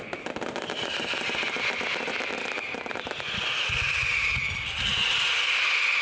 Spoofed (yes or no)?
no